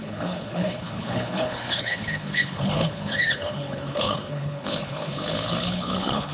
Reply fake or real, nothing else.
fake